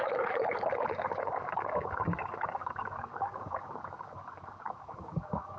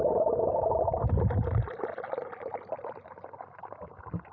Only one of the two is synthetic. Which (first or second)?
first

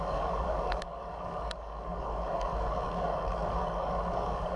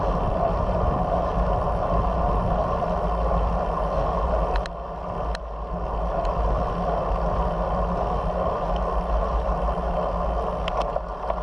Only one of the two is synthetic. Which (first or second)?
first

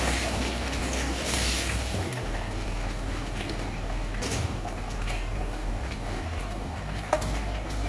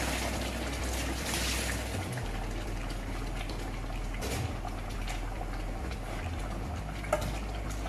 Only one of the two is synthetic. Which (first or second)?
first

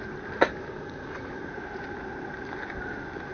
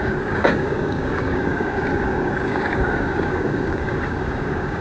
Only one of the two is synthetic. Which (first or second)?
second